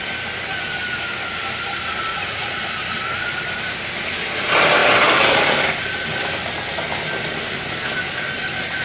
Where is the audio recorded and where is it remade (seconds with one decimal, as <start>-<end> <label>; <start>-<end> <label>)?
0.0-2.1 recorded; 2.1-2.6 remade; 2.6-8.8 recorded